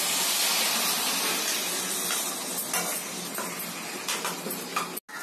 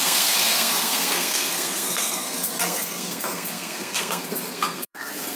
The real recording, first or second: first